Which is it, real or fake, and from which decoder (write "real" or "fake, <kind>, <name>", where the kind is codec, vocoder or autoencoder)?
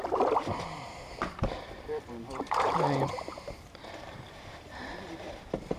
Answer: fake, vocoder, BigVGAN v2